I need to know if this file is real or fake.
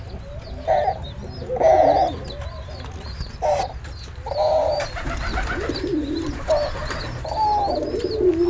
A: real